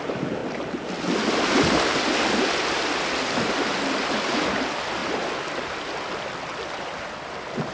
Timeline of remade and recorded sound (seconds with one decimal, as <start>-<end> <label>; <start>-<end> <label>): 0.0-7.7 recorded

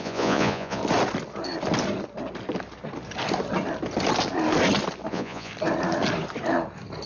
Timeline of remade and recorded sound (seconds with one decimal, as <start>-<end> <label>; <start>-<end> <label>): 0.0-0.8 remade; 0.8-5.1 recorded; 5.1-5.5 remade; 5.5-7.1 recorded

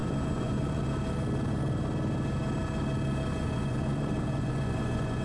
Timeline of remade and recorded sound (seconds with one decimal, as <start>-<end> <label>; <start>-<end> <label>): 0.0-0.8 remade; 0.8-3.3 recorded; 3.3-5.2 remade

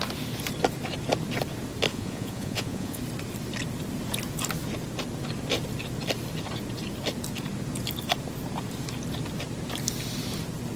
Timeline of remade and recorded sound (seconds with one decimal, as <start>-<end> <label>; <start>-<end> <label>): 0.0-1.9 recorded; 1.9-3.0 remade; 3.0-10.8 recorded

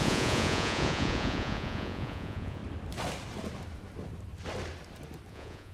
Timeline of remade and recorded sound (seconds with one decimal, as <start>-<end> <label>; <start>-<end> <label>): 0.0-2.6 remade; 2.6-5.3 recorded; 5.3-5.7 remade